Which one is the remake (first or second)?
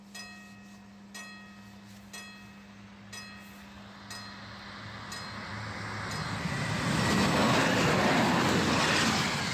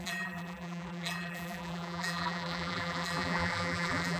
second